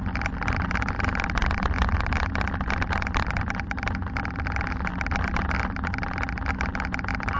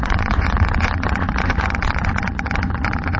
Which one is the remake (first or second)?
second